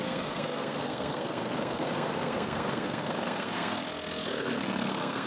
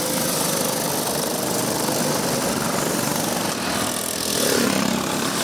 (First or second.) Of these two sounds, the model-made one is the first